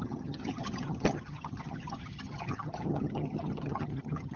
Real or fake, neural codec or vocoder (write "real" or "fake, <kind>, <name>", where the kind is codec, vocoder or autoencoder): fake, vocoder, HiFi-GAN